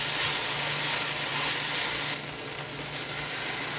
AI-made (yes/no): no